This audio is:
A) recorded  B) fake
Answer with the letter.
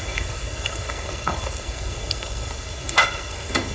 B